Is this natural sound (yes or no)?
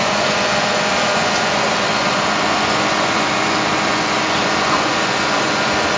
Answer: no